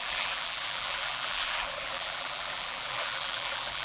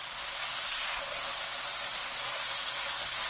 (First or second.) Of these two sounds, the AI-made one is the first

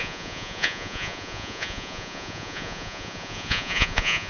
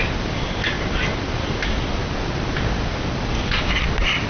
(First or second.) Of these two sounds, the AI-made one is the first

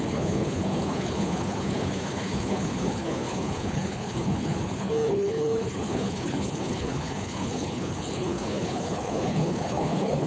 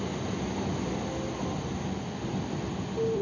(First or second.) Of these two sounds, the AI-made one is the first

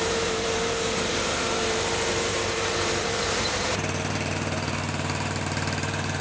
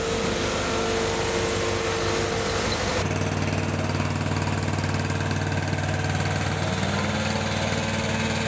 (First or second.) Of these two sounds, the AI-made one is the first